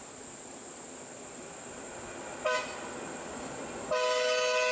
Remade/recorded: recorded